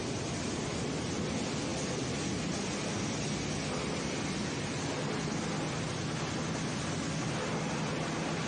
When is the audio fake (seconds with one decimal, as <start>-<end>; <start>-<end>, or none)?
none